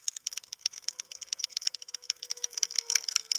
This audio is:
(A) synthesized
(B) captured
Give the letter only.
A